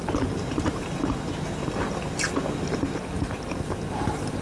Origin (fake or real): fake